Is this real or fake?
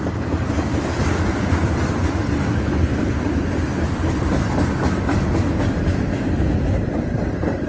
real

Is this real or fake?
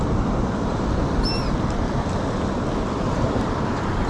real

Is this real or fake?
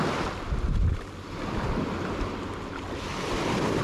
real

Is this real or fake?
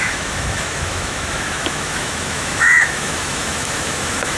fake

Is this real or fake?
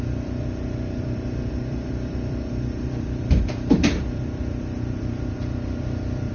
fake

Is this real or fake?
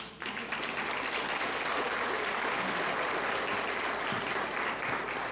fake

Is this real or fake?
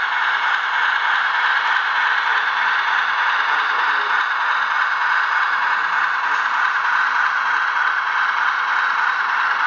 real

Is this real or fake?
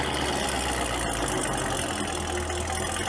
real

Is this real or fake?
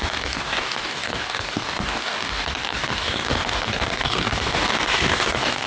fake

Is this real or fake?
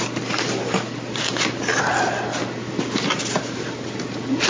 real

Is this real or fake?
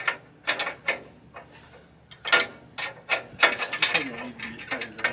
real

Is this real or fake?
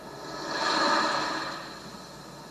real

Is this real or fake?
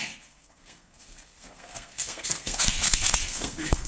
fake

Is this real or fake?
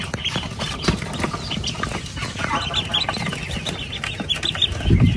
real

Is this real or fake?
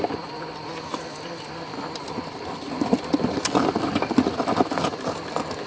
fake